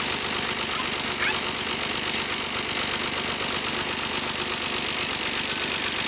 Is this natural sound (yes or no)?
yes